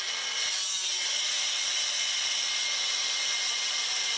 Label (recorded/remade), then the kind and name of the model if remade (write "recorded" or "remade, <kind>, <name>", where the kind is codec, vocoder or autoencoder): recorded